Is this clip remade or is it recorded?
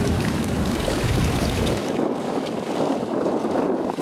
remade